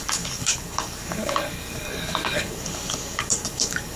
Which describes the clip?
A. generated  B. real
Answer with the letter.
A